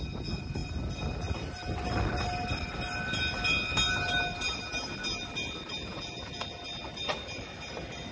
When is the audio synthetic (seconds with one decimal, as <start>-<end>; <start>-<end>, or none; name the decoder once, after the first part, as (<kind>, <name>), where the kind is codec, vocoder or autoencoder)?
5.9-6.6 (vocoder, Vocos)